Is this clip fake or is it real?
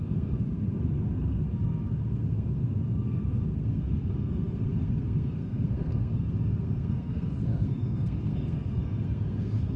fake